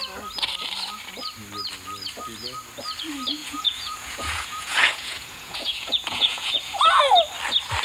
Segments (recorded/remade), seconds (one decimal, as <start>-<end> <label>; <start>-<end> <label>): 0.0-3.4 recorded; 3.4-6.8 remade; 6.8-7.8 recorded